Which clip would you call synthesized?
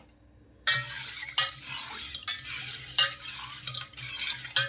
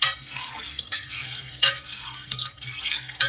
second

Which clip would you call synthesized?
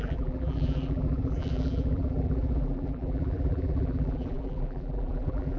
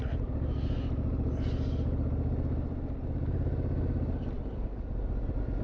first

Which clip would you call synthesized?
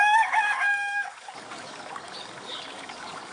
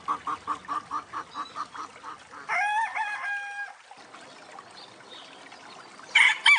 first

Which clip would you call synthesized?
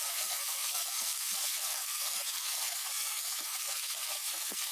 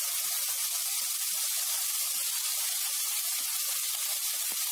first